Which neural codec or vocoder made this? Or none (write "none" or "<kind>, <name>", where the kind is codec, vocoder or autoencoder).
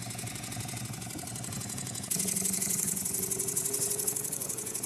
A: vocoder, Vocos